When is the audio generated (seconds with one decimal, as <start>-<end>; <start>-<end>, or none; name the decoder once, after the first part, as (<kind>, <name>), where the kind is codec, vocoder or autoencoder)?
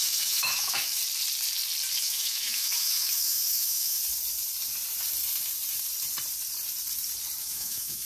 0.0-1.0 (autoencoder, DAC-VAE); 2.0-4.0; 7.4-8.0